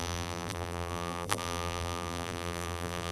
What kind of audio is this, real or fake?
fake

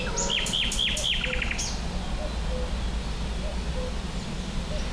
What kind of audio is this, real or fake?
real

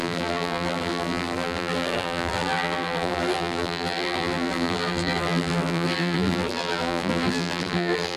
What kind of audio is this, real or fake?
fake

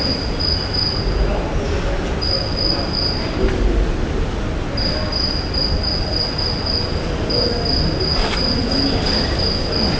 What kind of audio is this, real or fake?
real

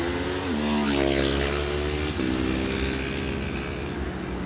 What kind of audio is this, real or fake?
real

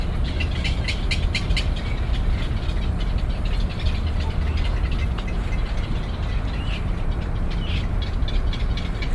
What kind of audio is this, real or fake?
real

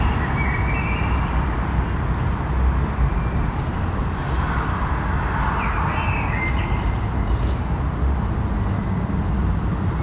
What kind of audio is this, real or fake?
real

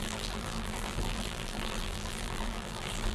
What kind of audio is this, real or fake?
fake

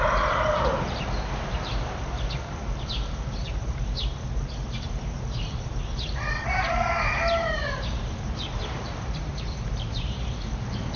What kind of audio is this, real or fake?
fake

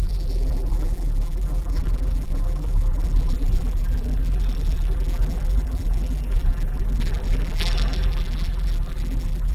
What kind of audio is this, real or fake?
fake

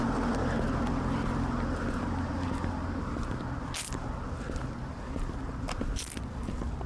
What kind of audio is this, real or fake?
real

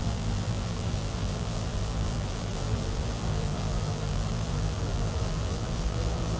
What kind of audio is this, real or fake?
fake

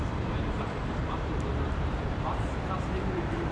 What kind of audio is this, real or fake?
fake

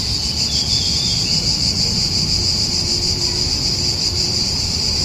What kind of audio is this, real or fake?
fake